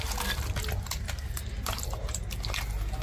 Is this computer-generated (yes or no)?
no